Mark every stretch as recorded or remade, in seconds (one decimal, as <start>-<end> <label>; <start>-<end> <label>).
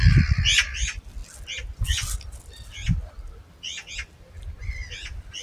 0.0-5.4 recorded